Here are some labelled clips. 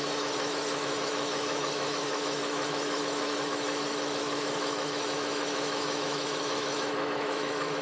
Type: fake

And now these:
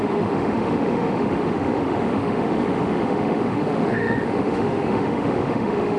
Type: fake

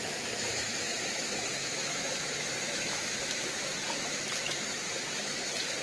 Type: fake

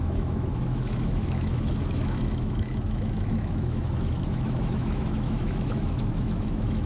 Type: fake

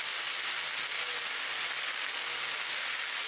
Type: real